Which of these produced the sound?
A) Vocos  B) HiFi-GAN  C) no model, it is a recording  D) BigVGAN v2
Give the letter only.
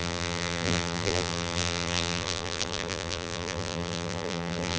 D